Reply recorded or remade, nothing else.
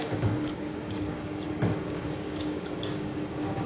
remade